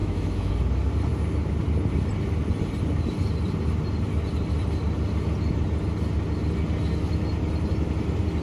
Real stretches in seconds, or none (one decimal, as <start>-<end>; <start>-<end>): 0.5-8.4